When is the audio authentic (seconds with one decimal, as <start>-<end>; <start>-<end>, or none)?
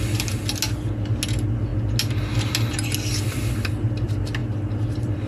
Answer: 0.0-5.3